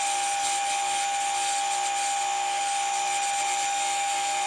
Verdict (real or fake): real